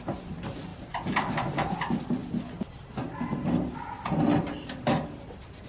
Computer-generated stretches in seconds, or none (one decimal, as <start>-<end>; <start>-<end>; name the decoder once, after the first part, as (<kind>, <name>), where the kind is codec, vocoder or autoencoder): 0.0-0.7 (vocoder, BigVGAN v2); 1.3-2.2